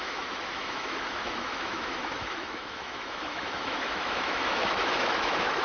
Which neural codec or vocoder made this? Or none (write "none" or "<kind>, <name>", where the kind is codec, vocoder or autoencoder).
autoencoder, DAC-VAE